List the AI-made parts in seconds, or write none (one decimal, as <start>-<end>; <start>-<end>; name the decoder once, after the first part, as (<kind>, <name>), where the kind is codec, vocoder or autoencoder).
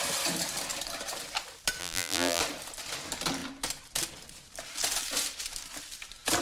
1.8-2.4 (vocoder, BigVGAN v2)